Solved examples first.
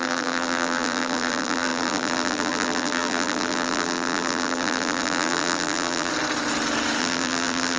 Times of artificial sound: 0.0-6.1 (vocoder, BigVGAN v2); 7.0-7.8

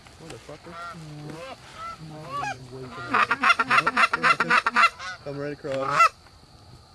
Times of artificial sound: 1.7-2.6 (vocoder, BigVGAN v2)

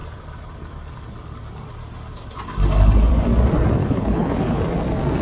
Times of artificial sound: 3.8-4.6 (codec, HILCodec)

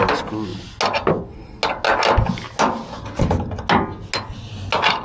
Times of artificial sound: none

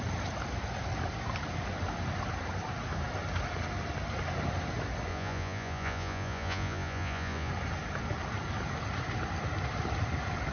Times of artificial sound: 5.1-7.5 (vocoder, Vocos)

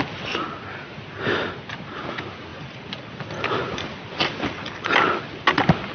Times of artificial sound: 2.5-5.0 (vocoder, BigVGAN v2)

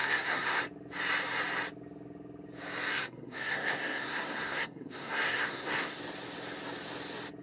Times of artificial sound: 0.0-0.6 (codec, SNAC); 2.9-6.0

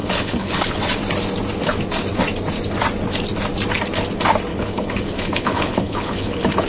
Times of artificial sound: 0.0-0.8 (codec, HILCodec); 4.5-6.7